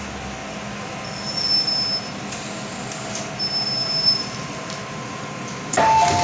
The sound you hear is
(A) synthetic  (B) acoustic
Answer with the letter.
B